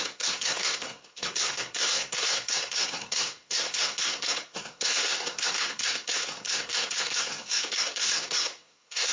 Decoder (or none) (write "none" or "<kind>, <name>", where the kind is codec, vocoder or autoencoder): codec, SNAC